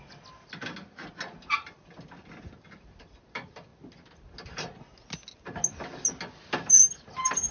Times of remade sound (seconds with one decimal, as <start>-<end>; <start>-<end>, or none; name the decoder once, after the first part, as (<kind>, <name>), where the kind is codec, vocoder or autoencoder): none